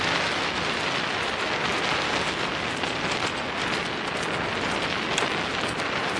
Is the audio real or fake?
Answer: real